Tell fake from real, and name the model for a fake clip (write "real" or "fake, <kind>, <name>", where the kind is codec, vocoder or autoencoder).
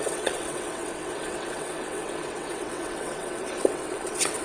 fake, vocoder, WaveNeXt